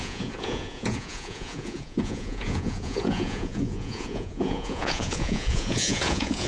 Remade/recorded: remade